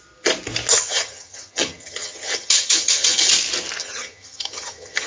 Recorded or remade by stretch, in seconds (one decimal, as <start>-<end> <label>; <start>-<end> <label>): 0.0-0.7 recorded; 0.7-3.3 remade; 3.3-3.8 recorded; 3.8-5.1 remade